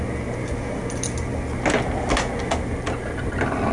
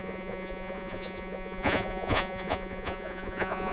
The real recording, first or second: first